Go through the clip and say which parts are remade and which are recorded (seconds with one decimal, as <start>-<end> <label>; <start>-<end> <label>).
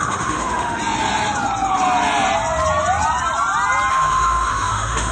0.0-0.8 remade; 0.8-3.9 recorded; 3.9-5.1 remade